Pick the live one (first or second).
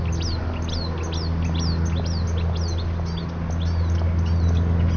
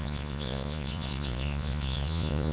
first